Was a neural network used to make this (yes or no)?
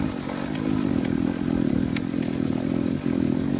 no